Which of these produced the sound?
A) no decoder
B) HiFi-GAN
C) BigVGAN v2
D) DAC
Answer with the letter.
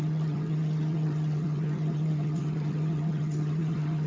B